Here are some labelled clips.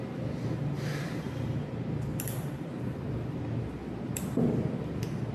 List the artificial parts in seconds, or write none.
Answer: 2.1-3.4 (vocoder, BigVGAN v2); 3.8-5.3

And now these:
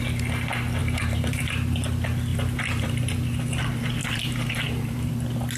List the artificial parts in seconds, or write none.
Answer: 0.8-1.5 (vocoder, BigVGAN v2); 2.3-3.6; 4.0-5.1

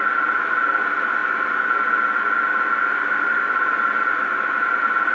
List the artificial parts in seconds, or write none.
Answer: 0.0-5.1 (vocoder, BigVGAN v2)

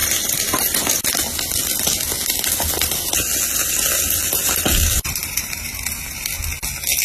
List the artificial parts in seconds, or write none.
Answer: 5.2-6.3 (vocoder, BigVGAN v2)